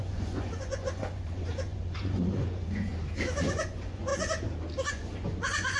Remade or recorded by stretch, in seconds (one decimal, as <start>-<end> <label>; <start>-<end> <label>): 0.0-2.9 remade; 2.9-3.5 recorded; 3.5-4.1 remade; 4.1-4.9 recorded; 4.9-5.8 remade